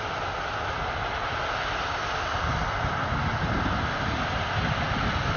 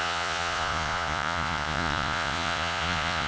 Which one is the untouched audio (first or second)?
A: first